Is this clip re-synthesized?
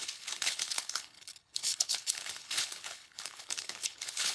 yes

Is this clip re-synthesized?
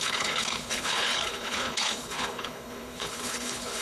yes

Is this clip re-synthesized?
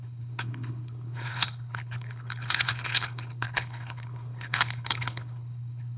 yes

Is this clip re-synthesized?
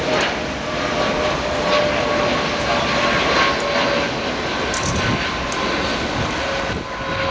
no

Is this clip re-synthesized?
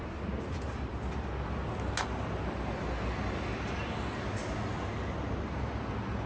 no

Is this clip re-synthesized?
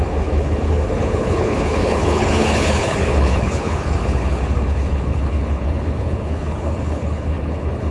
yes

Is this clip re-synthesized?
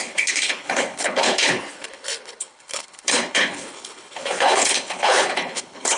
yes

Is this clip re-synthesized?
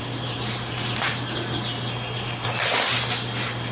no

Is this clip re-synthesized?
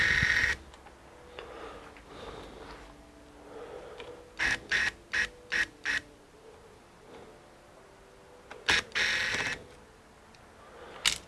no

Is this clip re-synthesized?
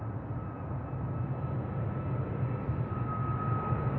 no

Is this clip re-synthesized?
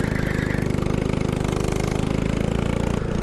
no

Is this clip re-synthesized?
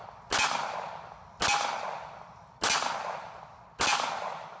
no